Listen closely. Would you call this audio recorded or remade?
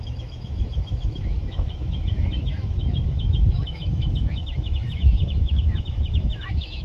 remade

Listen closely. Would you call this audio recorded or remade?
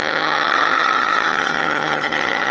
remade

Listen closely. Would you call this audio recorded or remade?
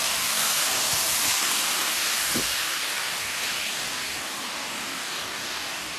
remade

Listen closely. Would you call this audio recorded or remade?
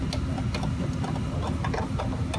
recorded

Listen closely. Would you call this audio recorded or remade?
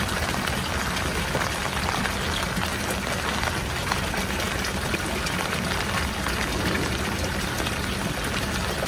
recorded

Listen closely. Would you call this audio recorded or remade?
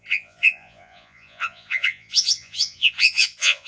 remade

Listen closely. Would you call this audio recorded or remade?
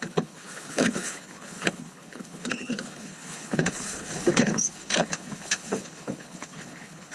remade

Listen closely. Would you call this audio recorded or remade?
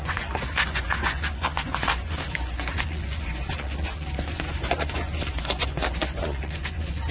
remade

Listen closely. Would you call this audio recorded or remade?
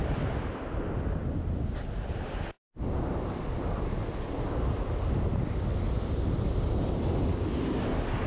recorded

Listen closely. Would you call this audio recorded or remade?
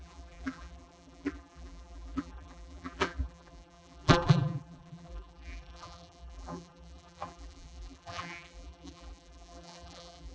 remade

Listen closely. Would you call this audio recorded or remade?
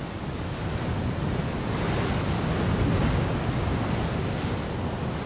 recorded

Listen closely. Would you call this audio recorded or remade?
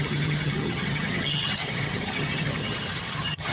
remade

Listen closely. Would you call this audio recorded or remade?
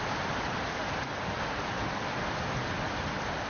recorded